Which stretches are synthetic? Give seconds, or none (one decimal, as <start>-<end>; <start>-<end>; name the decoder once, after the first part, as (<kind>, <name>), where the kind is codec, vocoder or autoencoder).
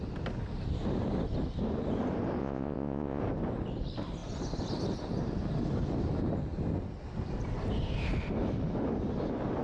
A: 2.4-3.2 (vocoder, Vocos)